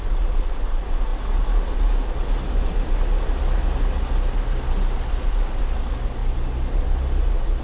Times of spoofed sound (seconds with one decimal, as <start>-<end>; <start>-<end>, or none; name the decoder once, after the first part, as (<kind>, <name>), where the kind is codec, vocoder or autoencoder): none